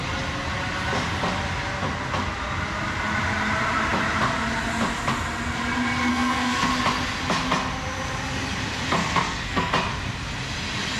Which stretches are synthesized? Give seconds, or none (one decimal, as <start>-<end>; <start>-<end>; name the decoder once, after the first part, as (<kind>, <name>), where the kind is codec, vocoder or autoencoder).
6.1-6.7 (codec, SNAC); 9.0-9.7